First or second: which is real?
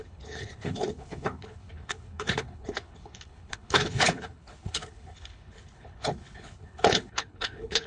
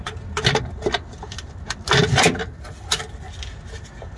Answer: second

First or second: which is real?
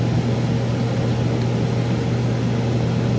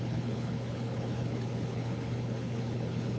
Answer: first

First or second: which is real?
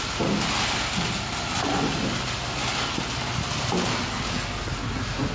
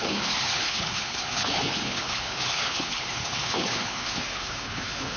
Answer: first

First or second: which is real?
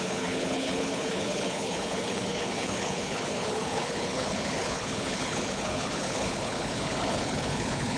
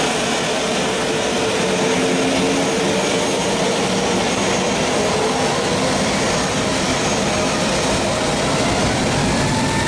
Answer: second